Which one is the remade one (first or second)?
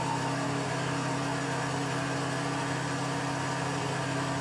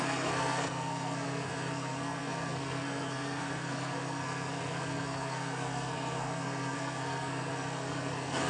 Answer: second